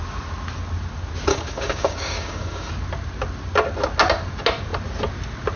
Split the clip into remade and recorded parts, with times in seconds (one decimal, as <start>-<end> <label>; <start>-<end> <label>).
0.0-1.3 recorded; 1.3-2.7 remade; 2.7-5.6 recorded